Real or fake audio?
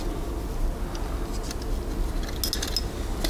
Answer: real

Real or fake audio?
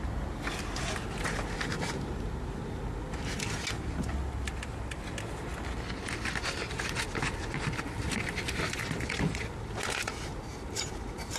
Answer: real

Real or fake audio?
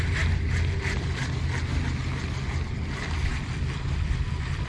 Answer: real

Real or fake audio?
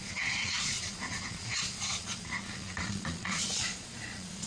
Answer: fake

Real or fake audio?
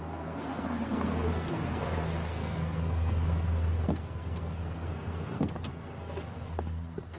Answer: fake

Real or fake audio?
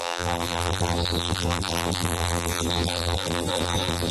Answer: fake